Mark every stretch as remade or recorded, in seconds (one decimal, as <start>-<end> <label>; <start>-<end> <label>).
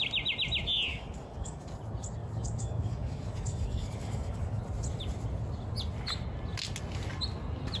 0.0-0.9 recorded; 0.9-1.7 remade; 1.7-2.2 recorded; 2.2-4.6 remade; 4.6-7.8 recorded